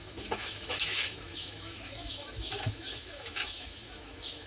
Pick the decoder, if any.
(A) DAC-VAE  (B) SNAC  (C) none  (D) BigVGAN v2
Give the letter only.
A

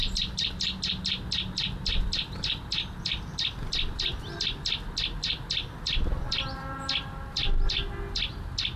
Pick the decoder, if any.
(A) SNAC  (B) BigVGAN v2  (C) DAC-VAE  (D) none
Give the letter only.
D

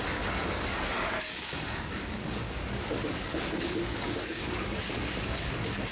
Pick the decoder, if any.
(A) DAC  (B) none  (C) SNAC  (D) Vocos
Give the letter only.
A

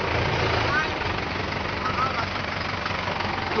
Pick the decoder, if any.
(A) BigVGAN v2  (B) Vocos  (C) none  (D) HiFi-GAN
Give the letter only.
C